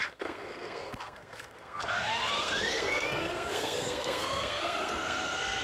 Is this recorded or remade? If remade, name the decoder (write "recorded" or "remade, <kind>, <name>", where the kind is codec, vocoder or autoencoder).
remade, codec, SNAC